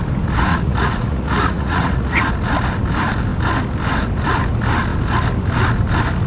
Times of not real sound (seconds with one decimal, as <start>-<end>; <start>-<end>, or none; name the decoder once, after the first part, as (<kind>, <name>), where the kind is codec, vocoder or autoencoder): 0.5-2.3 (vocoder, Vocos)